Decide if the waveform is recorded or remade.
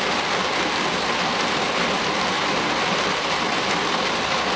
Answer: recorded